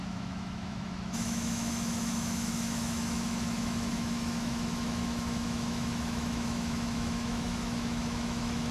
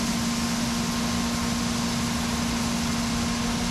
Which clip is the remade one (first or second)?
first